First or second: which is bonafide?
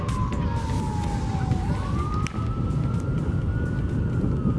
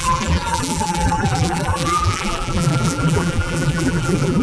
first